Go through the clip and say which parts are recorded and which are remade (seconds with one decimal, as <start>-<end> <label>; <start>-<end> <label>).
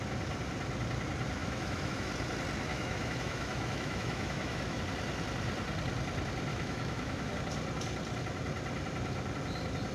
0.0-1.4 recorded; 1.4-2.1 remade; 2.1-2.7 recorded; 2.7-4.8 remade; 4.8-6.5 recorded; 6.5-7.3 remade; 7.3-9.9 recorded